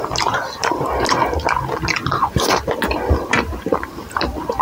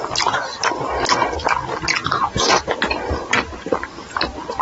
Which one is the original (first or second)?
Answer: second